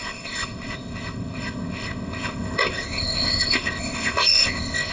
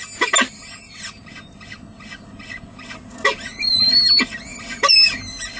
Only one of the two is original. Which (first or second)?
second